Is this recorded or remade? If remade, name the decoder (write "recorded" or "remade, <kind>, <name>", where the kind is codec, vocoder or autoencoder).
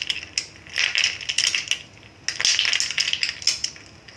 recorded